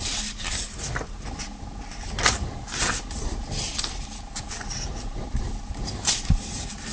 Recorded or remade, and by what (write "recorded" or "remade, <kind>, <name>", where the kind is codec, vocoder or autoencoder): remade, vocoder, BigVGAN v2